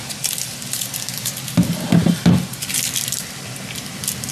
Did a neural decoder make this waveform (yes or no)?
no